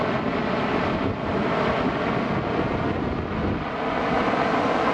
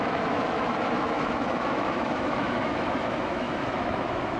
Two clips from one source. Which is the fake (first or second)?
second